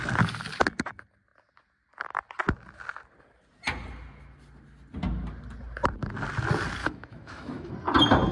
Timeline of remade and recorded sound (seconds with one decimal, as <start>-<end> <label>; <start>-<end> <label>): 0.0-6.8 recorded; 6.8-7.7 remade; 7.7-8.3 recorded